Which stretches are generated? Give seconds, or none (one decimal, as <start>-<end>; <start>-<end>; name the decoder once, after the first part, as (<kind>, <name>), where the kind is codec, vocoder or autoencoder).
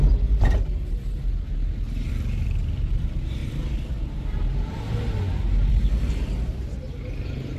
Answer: none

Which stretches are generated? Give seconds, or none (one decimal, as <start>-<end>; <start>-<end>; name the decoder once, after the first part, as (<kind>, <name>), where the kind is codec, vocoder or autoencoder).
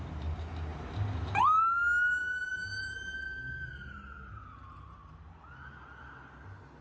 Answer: 2.2-5.1 (vocoder, BigVGAN v2)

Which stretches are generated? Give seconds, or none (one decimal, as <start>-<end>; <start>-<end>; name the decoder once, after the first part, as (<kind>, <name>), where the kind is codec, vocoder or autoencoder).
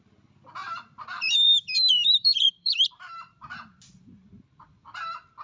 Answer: 0.6-3.8 (vocoder, BigVGAN v2)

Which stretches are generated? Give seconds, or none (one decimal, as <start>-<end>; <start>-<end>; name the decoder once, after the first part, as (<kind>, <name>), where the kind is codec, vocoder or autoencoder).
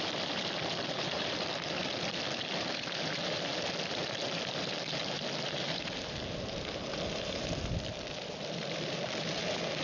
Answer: 0.0-4.2 (vocoder, BigVGAN v2); 8.6-9.8